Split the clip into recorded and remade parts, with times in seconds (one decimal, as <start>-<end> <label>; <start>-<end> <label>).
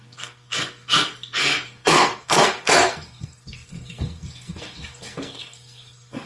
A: 0.0-6.3 remade